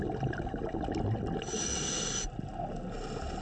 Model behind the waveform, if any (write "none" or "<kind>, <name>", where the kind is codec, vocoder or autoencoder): none